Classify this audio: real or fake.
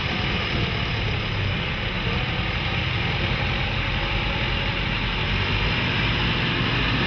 real